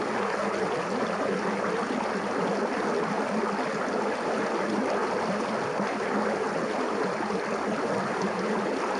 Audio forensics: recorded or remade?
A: recorded